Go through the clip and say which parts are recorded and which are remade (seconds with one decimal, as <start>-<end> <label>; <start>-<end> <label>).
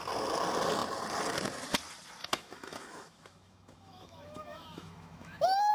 0.0-2.2 recorded; 2.2-5.7 remade